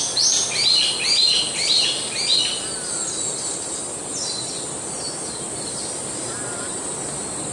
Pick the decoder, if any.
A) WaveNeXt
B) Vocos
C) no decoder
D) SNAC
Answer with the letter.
C